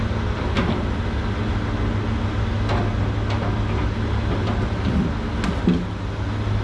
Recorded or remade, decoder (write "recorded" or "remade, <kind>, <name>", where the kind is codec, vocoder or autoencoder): recorded